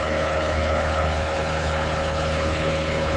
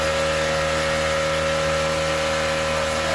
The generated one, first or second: first